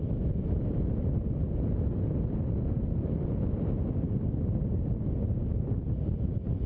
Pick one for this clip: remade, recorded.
recorded